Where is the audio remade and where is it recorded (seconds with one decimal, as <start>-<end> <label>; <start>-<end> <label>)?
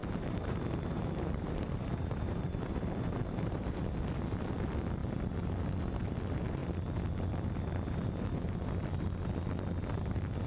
0.0-3.8 remade; 3.8-10.5 recorded